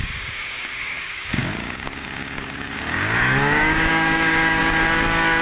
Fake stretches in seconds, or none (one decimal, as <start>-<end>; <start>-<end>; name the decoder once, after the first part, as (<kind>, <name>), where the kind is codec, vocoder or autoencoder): 0.0-5.4 (codec, DAC)